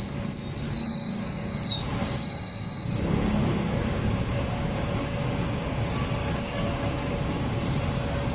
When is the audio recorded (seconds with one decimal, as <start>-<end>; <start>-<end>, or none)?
0.0-0.8; 5.8-6.2; 7.6-8.3